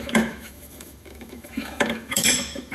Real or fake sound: fake